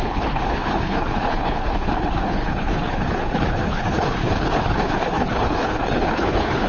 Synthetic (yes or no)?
yes